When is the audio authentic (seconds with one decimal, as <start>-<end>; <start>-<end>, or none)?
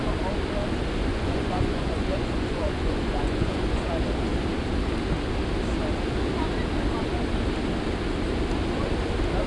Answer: 0.0-1.1; 3.8-9.5